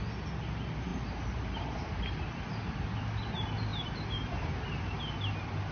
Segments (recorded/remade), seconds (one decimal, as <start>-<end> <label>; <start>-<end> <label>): 0.0-0.9 recorded; 0.9-2.0 remade; 2.0-5.7 recorded